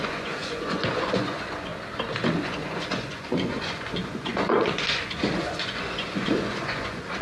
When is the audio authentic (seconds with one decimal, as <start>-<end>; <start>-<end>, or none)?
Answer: 1.7-2.4

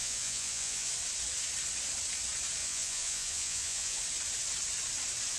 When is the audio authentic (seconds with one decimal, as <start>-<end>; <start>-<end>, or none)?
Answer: 0.9-2.6; 4.0-5.4

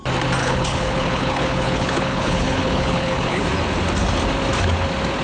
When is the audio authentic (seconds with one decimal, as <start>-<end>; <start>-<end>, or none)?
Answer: 0.0-0.4; 3.4-5.2

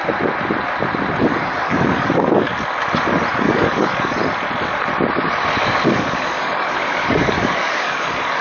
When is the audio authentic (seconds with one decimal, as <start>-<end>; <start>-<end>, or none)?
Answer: 0.0-1.2; 2.5-3.3; 4.2-5.6

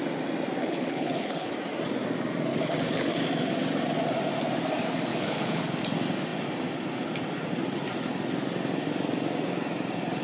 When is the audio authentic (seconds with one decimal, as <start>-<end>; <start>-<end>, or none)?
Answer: 0.0-0.6; 1.5-2.5; 3.1-5.1; 5.6-10.2

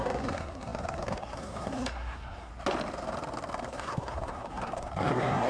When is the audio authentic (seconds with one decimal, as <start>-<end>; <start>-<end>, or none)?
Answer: 2.5-3.6

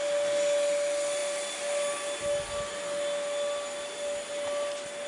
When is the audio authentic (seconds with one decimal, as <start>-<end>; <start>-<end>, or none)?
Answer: 0.0-5.1

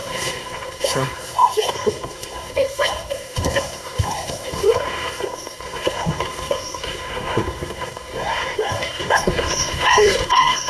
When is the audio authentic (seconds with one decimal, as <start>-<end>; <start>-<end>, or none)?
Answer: none